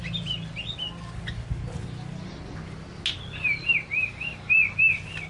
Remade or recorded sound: recorded